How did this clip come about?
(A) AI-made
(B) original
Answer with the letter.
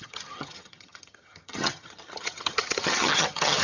A